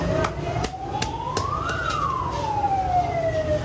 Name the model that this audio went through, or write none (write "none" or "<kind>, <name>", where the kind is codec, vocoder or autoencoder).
none